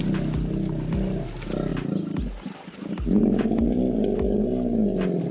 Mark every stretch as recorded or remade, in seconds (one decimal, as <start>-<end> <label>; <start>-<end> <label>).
0.0-5.3 recorded